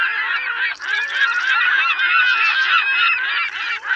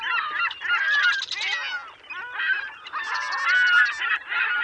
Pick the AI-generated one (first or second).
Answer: first